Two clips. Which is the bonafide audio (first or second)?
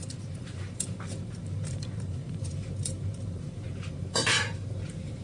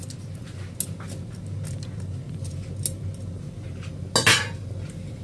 second